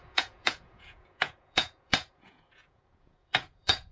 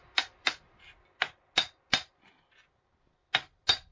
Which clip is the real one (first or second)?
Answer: second